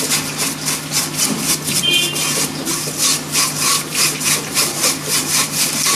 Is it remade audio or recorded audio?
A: recorded